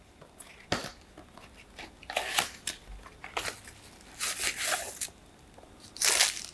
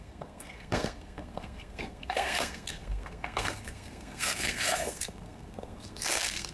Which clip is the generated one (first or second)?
second